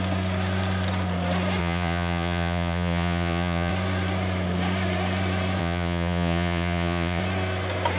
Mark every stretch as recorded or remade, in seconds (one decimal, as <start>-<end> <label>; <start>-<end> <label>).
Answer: 0.0-1.6 recorded; 1.6-3.7 remade; 3.7-5.6 recorded; 5.6-7.2 remade; 7.2-8.0 recorded